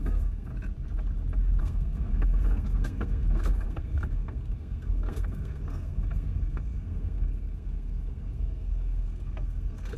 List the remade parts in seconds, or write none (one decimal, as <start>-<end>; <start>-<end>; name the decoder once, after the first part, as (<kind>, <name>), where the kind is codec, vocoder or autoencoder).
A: 0.0-0.5 (codec, SNAC); 1.6-10.0